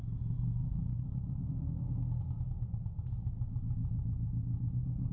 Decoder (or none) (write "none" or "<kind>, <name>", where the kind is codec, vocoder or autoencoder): none